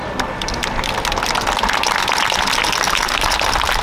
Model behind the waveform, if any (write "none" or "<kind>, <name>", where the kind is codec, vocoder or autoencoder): none